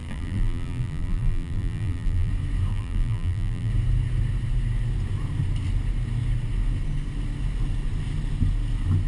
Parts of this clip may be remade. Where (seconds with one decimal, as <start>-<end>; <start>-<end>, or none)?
0.0-2.3; 2.7-3.7